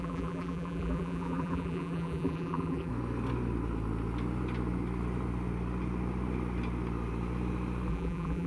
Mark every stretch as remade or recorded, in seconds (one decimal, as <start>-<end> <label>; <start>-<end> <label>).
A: 0.0-2.9 remade; 2.9-7.9 recorded; 7.9-8.5 remade